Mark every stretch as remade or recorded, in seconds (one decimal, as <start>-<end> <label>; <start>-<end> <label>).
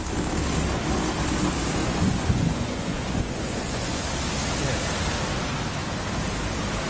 0.0-1.8 recorded; 1.8-4.0 remade; 4.0-6.9 recorded